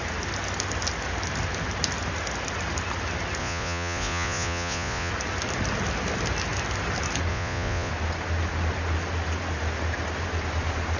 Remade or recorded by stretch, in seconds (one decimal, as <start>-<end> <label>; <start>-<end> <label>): 0.0-3.4 recorded; 3.4-5.1 remade; 5.1-7.3 recorded; 7.3-7.9 remade; 7.9-11.0 recorded